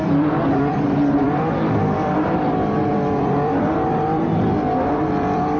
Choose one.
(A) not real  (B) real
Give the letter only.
A